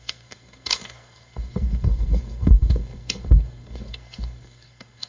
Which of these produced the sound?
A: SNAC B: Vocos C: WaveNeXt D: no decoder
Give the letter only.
A